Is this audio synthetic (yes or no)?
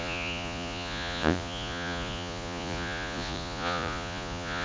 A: yes